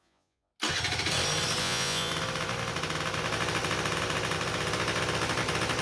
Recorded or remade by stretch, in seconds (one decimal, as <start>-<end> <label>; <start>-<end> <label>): 0.0-0.5 remade; 0.5-1.6 recorded; 1.6-2.1 remade; 2.1-5.8 recorded